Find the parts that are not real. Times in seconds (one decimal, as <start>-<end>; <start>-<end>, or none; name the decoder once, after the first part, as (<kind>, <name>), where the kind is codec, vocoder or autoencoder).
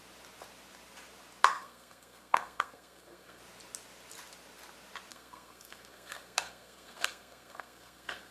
1.5-3.4 (codec, SNAC); 5.1-8.3